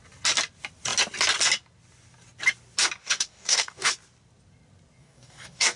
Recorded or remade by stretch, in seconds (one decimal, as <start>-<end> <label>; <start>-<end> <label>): 0.0-3.0 recorded; 3.0-3.9 remade; 3.9-5.0 recorded; 5.0-5.8 remade